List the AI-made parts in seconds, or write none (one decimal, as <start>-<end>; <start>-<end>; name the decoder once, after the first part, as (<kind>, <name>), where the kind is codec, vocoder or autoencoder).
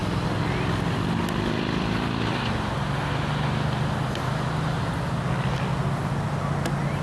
none